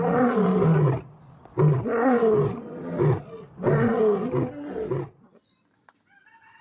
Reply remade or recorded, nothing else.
recorded